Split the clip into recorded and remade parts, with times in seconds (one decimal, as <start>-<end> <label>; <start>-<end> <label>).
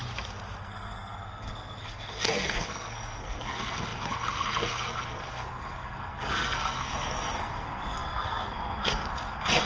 0.0-0.6 recorded; 0.6-9.7 remade